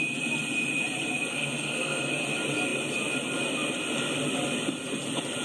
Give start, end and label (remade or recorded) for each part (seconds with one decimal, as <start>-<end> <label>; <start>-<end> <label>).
0.0-1.3 recorded; 1.3-2.1 remade; 2.1-5.4 recorded